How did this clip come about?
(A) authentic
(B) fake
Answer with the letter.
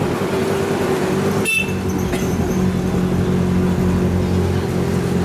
A